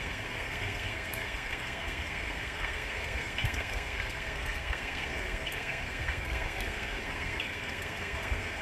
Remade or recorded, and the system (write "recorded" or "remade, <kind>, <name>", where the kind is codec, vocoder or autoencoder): remade, codec, SNAC